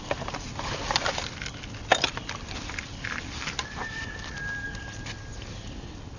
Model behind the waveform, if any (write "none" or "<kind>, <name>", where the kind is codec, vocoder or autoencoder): none